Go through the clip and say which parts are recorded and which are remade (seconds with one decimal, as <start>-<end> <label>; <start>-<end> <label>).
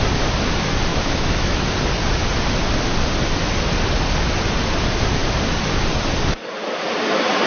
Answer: 0.0-0.9 recorded; 0.9-1.7 remade; 1.7-7.5 recorded